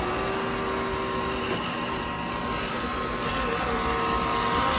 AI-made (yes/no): no